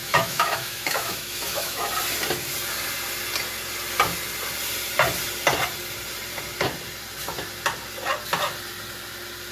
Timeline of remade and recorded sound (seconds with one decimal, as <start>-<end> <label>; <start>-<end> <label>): 0.0-1.9 remade; 1.9-9.5 recorded